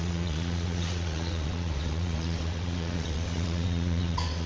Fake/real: fake